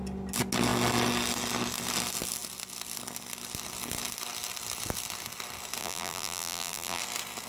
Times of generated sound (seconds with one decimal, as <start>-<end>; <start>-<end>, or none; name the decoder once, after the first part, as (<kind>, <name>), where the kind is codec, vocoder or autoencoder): 5.8-7.0 (vocoder, BigVGAN v2)